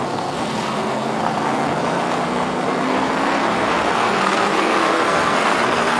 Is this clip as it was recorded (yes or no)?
no